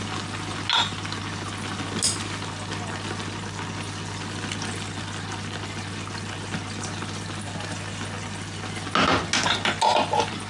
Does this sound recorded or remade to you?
recorded